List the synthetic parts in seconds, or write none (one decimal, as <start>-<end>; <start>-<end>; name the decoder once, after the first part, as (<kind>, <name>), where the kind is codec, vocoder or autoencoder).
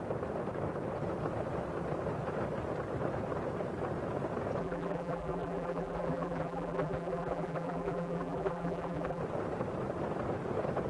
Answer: 4.6-9.2 (vocoder, BigVGAN v2)